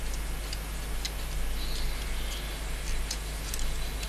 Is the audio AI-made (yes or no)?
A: no